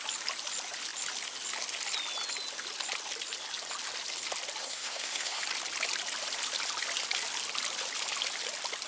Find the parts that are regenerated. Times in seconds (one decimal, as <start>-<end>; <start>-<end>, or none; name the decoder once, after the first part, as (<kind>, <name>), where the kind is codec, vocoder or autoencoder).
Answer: 4.6-5.4 (codec, SNAC)